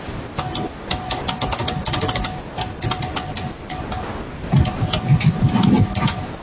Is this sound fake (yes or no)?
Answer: no